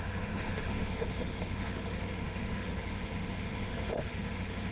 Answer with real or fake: fake